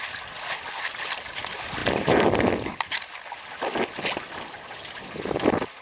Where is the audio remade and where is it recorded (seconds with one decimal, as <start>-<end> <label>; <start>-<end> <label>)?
0.0-5.8 recorded